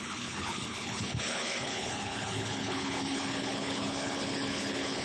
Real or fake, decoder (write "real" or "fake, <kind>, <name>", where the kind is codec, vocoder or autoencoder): fake, codec, HILCodec